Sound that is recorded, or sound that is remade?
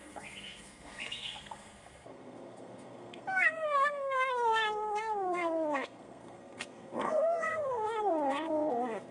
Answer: remade